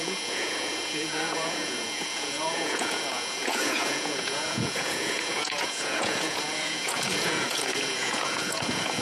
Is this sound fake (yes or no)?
yes